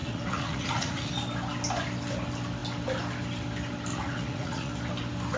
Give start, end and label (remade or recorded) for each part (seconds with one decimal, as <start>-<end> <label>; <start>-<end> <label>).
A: 0.0-1.1 remade; 1.1-3.9 recorded; 3.9-4.7 remade; 4.7-5.4 recorded